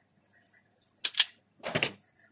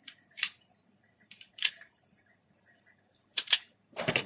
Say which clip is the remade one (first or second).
second